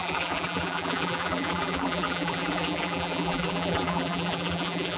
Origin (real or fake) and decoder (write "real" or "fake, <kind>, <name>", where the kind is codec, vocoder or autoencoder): fake, vocoder, BigVGAN v2